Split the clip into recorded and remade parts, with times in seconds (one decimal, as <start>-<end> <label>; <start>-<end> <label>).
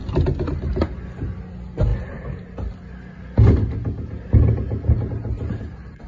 0.0-6.1 recorded